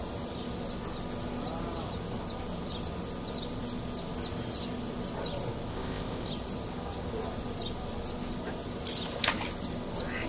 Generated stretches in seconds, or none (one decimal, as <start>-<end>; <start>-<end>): 5.7-6.3